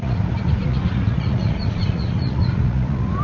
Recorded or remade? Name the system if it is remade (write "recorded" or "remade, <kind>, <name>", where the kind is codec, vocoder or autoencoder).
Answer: remade, vocoder, Vocos